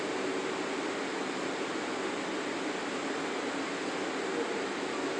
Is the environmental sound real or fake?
real